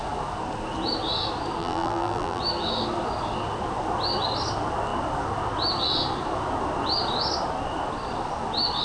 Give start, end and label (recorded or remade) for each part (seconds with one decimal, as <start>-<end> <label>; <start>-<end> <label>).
0.0-1.6 recorded; 1.6-2.4 remade; 2.4-8.8 recorded